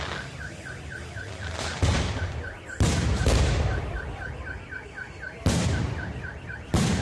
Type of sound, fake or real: real